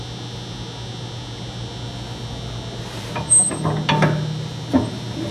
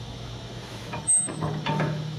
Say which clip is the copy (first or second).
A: second